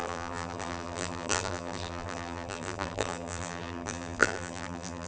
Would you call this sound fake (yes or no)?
yes